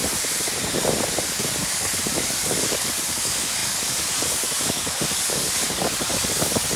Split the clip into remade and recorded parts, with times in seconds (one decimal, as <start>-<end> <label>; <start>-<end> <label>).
0.0-1.2 recorded; 1.2-6.8 remade